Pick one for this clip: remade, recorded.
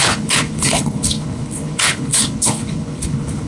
remade